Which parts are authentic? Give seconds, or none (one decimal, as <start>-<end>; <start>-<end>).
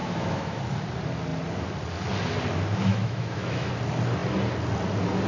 0.6-2.9; 3.7-5.3